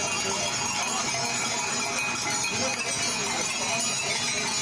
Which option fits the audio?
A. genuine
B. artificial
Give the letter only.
A